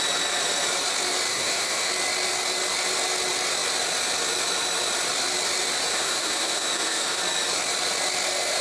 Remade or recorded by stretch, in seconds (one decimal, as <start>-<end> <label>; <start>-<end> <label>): 0.0-1.3 recorded; 1.3-1.9 remade; 1.9-5.9 recorded; 5.9-7.2 remade; 7.2-8.6 recorded